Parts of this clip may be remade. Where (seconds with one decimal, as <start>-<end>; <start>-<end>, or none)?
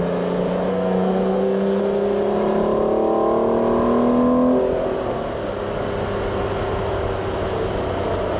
0.7-1.8